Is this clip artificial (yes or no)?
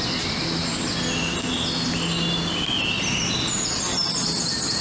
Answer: no